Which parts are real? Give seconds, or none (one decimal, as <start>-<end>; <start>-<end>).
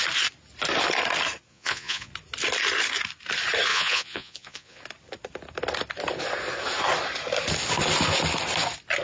0.0-1.5; 2.1-3.7; 4.8-9.0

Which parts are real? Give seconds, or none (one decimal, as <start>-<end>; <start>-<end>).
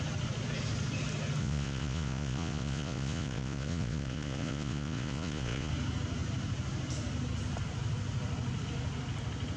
0.0-1.4; 5.7-9.6